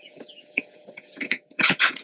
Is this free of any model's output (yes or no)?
no